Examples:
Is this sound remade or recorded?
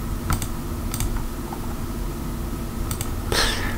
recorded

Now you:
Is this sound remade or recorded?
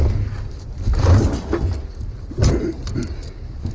recorded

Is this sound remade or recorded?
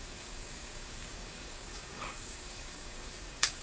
remade